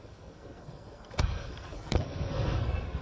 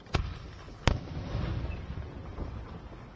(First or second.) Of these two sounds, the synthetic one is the first